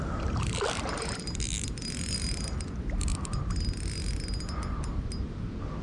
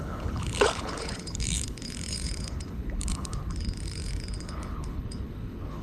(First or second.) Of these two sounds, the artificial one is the second